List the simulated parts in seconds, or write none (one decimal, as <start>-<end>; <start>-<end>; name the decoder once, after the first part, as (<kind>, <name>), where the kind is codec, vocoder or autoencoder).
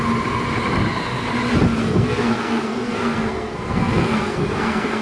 1.8-5.0 (codec, SNAC)